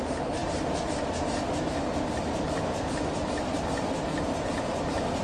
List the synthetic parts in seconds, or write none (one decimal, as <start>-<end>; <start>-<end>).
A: none